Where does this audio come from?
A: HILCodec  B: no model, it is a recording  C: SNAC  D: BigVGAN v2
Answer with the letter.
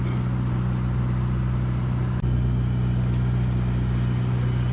B